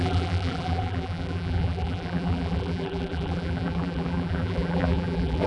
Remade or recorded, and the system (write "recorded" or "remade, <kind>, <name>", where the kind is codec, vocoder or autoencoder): remade, vocoder, BigVGAN v2